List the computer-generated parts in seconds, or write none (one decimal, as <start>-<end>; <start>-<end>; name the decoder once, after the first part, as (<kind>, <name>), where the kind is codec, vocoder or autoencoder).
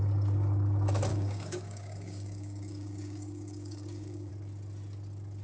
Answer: 1.1-4.3 (codec, DAC)